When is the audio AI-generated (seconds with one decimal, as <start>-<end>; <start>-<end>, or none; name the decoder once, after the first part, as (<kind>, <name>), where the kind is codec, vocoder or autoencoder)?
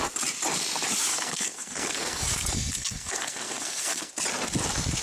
1.1-4.1 (codec, SNAC)